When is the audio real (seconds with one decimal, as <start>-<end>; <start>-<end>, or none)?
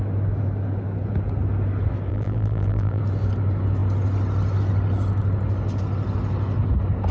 0.0-2.1; 3.0-7.1